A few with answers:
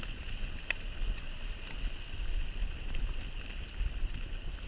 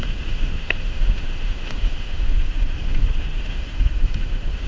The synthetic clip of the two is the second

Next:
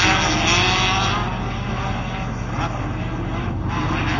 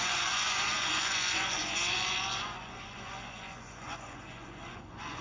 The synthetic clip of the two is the second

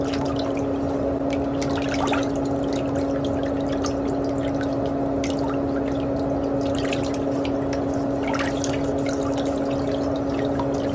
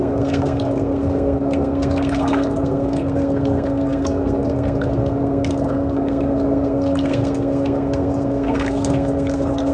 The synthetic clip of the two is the second